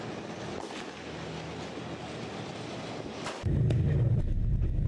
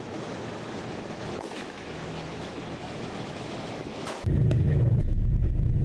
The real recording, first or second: first